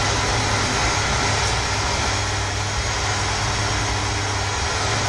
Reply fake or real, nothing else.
real